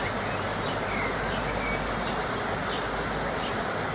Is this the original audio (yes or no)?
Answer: yes